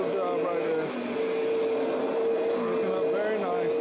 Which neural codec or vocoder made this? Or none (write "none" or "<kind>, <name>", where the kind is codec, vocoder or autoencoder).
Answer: none